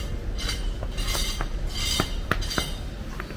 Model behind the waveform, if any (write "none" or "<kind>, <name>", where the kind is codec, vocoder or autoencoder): none